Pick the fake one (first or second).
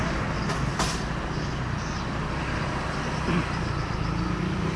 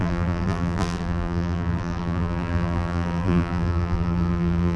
second